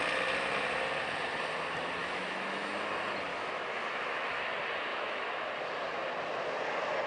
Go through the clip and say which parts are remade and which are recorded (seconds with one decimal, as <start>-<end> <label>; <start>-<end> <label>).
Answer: 0.0-2.0 recorded; 2.0-2.7 remade; 2.7-3.3 recorded; 3.3-4.4 remade; 4.4-4.9 recorded; 4.9-5.5 remade; 5.5-7.1 recorded

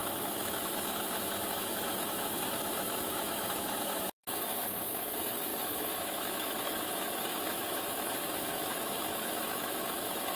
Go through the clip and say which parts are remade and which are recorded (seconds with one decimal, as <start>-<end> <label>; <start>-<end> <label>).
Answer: 0.0-10.4 remade

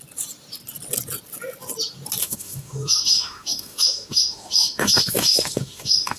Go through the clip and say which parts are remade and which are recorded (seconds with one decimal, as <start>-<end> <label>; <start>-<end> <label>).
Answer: 0.0-2.2 recorded; 2.2-6.2 remade

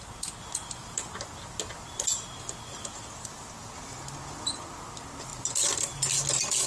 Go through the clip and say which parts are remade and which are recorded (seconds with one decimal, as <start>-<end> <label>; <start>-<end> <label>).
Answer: 0.0-6.7 recorded